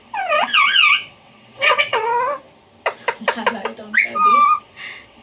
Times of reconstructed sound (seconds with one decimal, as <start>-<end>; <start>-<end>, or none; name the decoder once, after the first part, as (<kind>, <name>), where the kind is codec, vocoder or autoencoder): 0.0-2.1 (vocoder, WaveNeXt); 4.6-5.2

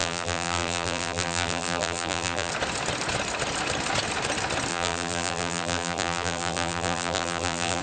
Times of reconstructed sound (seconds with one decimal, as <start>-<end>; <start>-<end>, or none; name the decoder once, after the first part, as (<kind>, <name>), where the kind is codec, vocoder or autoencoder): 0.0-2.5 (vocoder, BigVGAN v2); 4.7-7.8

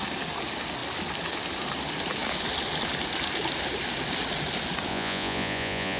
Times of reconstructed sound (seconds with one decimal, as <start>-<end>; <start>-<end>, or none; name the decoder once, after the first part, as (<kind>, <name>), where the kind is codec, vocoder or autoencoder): 4.9-6.0 (vocoder, Vocos)

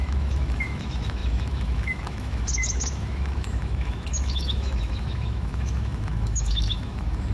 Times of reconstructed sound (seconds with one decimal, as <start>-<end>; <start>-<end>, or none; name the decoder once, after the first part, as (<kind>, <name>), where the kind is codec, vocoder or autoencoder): 0.0-7.3 (autoencoder, DAC-VAE)